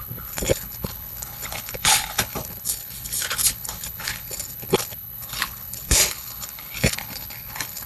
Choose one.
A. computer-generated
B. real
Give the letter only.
A